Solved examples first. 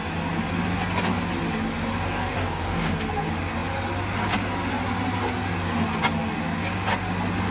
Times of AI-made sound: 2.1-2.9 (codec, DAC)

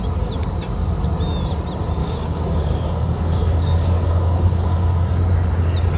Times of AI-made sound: 2.0-5.1 (codec, DAC)

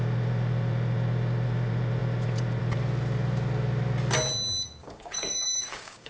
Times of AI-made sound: 4.8-6.1 (codec, DAC)

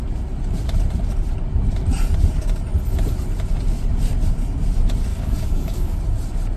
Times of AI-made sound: 5.1-6.0 (codec, DAC)

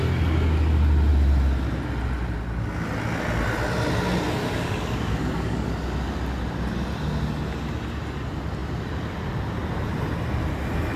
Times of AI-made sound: 4.4-5.7 (codec, DAC)